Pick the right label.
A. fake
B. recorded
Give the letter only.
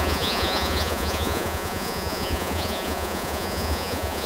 A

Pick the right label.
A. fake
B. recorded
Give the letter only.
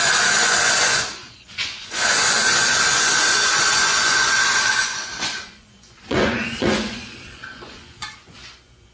A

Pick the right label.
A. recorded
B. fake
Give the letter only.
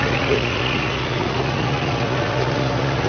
B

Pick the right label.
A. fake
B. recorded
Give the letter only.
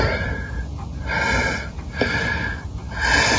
B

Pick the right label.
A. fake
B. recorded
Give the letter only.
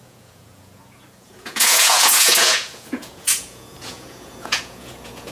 A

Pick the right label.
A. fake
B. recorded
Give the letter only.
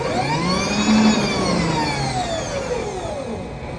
B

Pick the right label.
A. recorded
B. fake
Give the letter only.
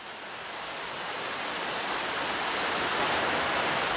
A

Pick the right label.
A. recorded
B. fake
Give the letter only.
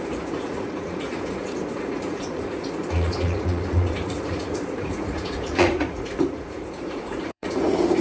B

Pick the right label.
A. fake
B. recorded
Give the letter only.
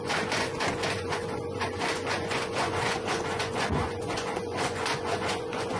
A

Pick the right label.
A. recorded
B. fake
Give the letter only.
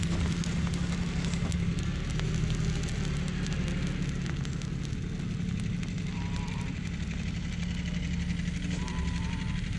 A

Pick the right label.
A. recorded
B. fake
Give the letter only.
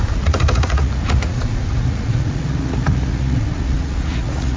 B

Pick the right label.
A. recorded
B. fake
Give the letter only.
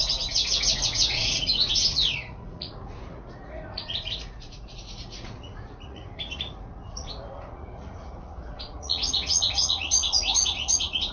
B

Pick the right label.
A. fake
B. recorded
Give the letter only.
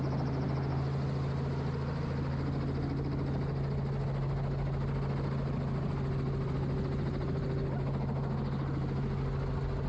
B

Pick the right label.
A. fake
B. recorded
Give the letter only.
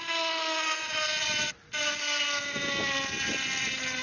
B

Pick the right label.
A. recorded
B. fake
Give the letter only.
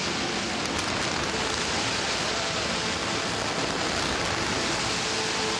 A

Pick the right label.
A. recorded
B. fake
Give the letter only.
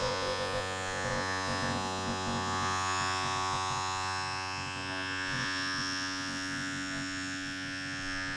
B